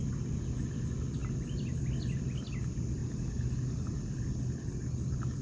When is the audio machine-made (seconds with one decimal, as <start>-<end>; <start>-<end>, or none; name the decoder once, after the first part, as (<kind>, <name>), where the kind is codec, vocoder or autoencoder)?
none